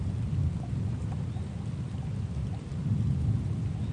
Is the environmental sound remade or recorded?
recorded